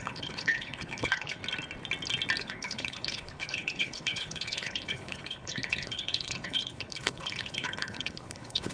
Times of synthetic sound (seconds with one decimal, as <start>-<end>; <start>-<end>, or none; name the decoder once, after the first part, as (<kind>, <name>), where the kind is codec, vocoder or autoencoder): 0.0-1.4 (codec, HILCodec); 2.4-8.7

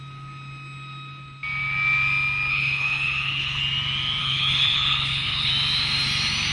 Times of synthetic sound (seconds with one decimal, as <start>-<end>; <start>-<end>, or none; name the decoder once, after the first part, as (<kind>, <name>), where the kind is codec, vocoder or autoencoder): 2.5-3.6 (codec, HILCodec); 4.2-5.5